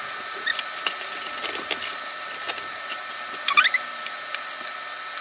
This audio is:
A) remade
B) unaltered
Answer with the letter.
B